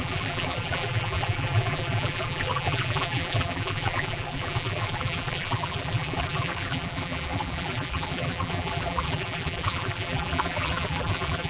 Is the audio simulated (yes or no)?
yes